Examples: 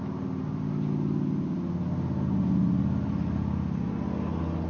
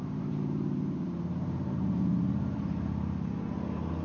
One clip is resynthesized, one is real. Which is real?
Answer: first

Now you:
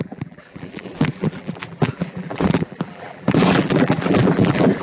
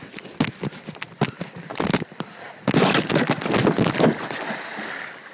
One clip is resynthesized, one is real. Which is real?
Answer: second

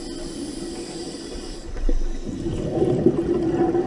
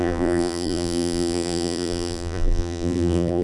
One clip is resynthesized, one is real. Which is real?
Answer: first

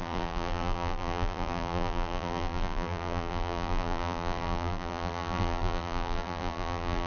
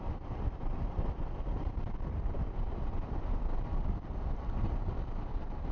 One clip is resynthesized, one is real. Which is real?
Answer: second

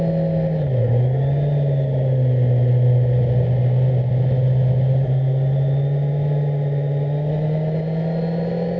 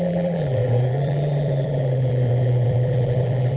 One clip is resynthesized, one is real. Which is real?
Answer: first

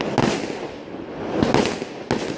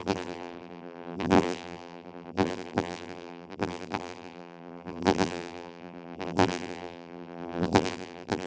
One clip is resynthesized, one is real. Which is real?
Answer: first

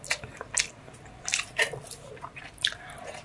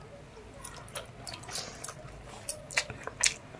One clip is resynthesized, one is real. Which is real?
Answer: second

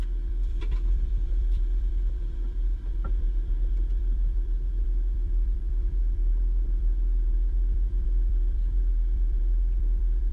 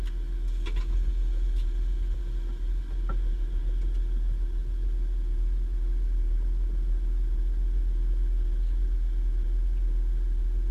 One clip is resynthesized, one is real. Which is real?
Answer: second